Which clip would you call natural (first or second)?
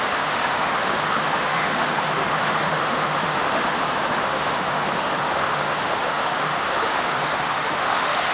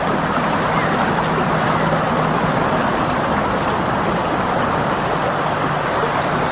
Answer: second